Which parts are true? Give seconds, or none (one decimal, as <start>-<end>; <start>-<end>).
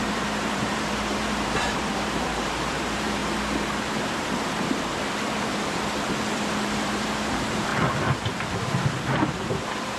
3.2-6.3; 7.7-8.9